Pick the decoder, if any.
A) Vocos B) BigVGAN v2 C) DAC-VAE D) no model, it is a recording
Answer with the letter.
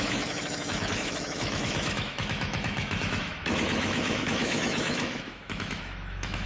C